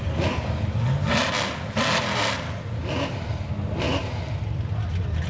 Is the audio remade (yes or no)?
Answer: no